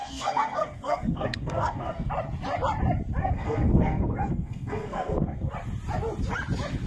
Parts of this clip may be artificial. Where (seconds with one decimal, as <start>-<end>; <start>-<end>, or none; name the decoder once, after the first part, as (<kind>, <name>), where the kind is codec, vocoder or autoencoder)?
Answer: 0.0-2.1 (codec, SNAC); 3.2-5.5